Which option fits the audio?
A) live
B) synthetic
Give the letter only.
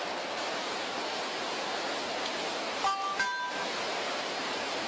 A